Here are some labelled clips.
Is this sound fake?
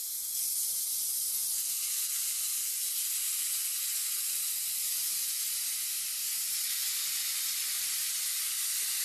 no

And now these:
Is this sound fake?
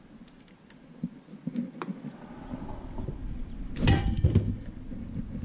no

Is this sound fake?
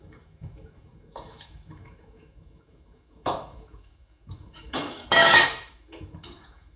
yes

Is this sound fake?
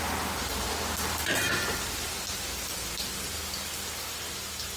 no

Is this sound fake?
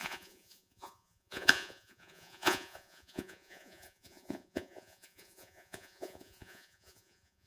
yes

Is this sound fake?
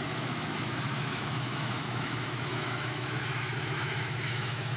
yes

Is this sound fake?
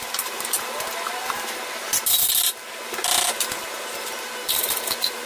no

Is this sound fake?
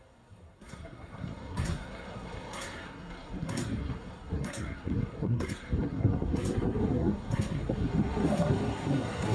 yes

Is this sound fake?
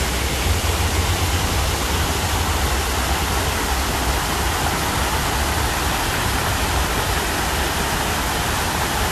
no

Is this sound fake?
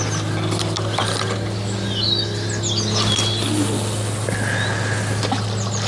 no